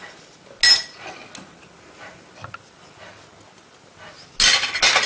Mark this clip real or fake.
real